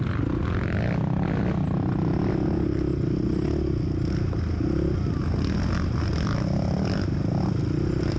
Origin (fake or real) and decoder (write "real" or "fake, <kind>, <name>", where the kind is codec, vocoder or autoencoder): real